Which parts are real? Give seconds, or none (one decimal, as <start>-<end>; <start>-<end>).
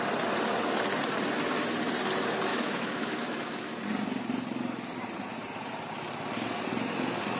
0.0-2.5; 3.7-7.4